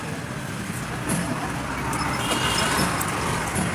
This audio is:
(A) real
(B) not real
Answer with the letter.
A